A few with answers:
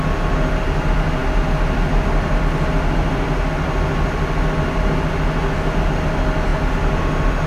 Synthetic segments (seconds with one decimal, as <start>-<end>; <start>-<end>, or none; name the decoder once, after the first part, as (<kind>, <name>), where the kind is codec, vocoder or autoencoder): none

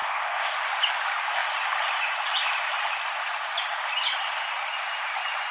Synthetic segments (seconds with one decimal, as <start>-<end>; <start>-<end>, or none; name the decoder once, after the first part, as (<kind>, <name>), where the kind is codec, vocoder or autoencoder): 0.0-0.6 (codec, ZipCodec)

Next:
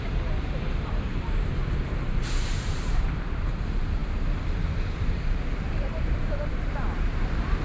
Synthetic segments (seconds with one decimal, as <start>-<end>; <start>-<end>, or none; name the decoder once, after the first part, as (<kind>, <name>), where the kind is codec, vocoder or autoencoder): 0.0-7.6 (vocoder, BigVGAN v2)

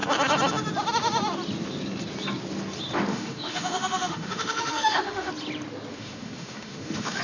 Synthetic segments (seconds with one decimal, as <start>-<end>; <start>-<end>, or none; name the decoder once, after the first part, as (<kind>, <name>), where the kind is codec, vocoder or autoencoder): 3.1-5.3 (autoencoder, DAC-VAE); 5.9-7.2

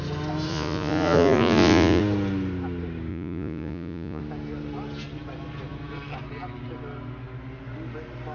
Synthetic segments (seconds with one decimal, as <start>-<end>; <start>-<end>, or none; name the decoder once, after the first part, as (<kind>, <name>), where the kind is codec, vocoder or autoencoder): 0.5-2.0 (vocoder, Vocos); 3.1-4.2